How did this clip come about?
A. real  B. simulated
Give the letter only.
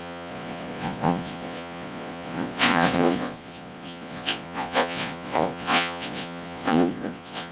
B